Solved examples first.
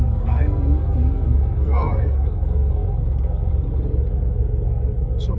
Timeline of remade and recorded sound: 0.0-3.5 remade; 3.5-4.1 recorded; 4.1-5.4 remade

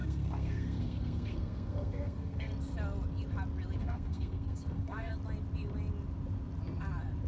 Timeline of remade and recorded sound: 0.0-2.5 remade; 2.5-3.8 recorded; 3.8-5.1 remade; 5.1-7.3 recorded

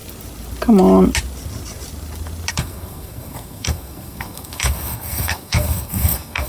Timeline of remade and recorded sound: 0.0-2.5 recorded; 2.5-6.5 remade

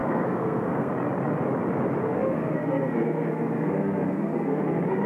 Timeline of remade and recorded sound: 0.0-0.9 remade; 0.9-2.0 recorded; 2.0-4.6 remade; 4.6-5.1 recorded

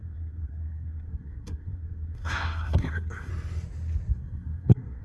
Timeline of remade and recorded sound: 0.0-3.3 remade; 3.3-4.1 recorded; 4.1-5.0 remade

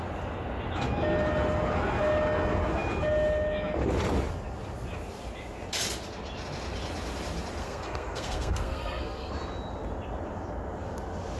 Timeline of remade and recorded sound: 0.0-7.6 recorded; 7.6-9.3 remade; 9.3-11.4 recorded

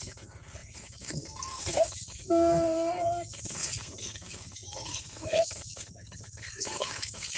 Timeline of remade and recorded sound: 0.0-7.4 remade

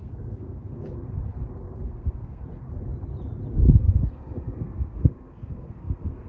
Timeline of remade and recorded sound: 0.0-0.8 remade; 0.8-1.7 recorded; 1.7-2.4 remade; 2.4-3.5 recorded; 3.5-6.3 remade